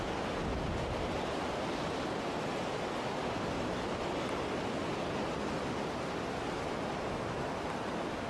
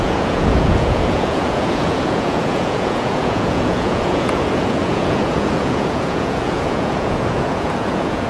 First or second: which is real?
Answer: first